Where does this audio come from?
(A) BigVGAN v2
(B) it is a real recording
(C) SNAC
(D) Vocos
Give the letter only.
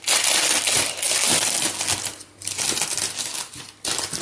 B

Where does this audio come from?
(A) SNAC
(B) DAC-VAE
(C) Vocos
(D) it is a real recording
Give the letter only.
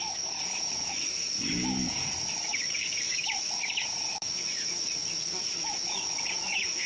B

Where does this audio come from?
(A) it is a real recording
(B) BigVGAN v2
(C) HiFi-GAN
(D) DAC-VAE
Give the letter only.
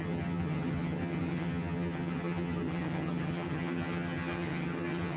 C